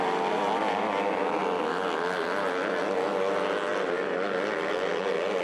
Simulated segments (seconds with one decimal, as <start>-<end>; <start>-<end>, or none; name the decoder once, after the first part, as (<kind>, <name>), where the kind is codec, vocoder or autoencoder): 1.4-2.8 (vocoder, BigVGAN v2)